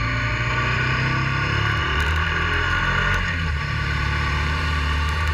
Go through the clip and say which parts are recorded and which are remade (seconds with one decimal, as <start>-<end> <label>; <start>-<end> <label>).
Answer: 0.0-1.8 recorded; 1.8-5.3 remade